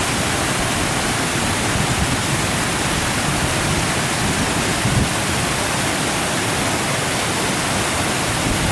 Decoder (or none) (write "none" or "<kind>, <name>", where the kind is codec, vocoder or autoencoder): none